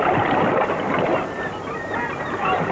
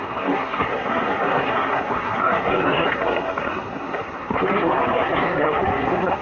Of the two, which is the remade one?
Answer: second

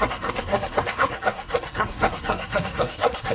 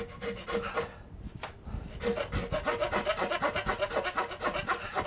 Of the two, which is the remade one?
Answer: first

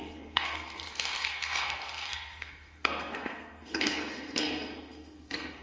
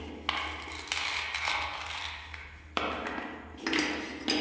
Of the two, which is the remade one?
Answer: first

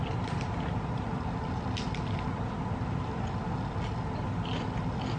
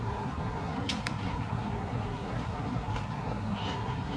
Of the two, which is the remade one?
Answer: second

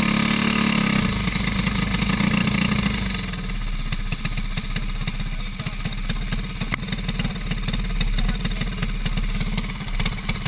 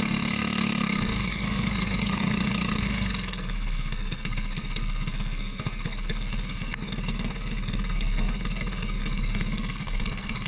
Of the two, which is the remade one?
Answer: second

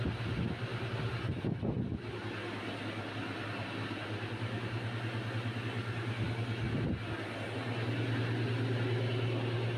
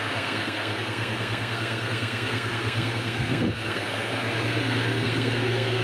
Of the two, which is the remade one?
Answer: second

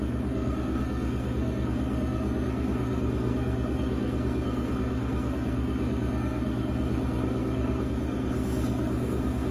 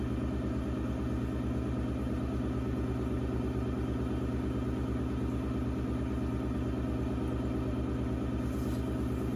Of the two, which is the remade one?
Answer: first